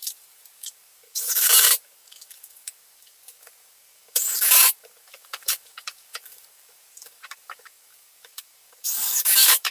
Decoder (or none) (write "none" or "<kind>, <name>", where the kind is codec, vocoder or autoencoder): codec, DAC